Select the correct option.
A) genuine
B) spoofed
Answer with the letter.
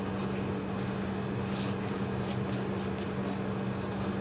A